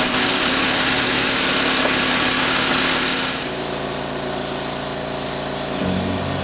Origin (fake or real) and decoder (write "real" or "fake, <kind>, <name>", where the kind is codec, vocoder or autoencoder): real